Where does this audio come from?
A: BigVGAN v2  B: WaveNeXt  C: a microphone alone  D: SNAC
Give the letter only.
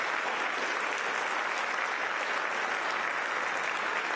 C